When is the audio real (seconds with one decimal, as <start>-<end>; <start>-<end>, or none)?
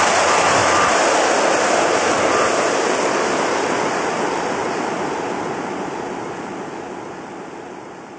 0.0-8.2